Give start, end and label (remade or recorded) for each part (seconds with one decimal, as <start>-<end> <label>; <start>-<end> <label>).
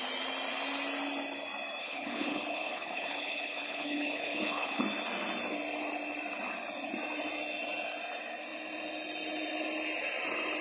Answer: 0.0-1.8 recorded; 1.8-4.8 remade; 4.8-10.6 recorded